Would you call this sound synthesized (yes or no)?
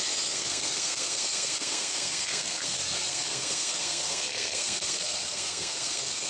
yes